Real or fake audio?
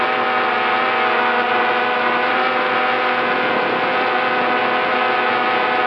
real